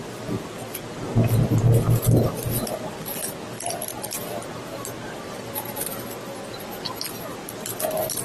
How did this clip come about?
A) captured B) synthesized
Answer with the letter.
A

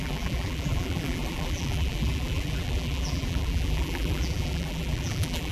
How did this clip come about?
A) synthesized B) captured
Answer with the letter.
A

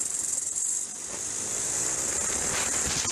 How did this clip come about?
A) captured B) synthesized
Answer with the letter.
B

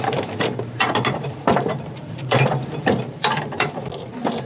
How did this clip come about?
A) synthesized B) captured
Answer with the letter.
A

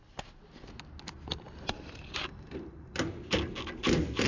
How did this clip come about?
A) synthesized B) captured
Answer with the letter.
B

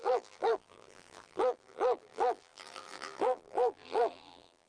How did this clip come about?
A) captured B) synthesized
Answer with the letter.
B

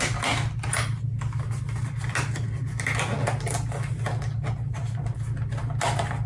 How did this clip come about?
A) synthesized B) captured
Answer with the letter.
B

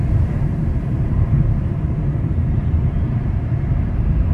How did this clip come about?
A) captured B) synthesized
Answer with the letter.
B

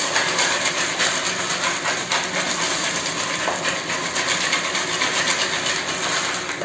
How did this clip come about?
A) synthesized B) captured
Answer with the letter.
B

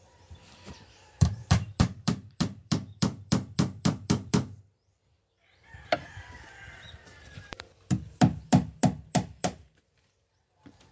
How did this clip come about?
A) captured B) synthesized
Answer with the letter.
B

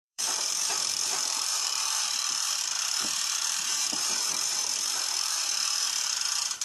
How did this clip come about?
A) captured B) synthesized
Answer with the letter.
B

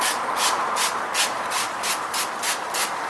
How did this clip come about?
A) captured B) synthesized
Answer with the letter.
A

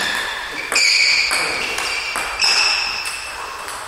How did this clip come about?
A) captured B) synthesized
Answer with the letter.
A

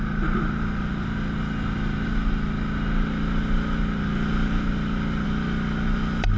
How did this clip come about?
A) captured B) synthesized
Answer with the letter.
A